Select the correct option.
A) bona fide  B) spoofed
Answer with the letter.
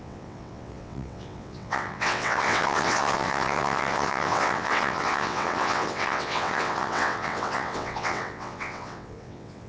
B